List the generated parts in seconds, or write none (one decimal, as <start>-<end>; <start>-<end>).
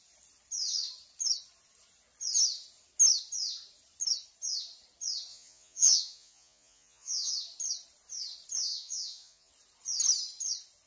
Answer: 5.3-7.3; 8.7-9.5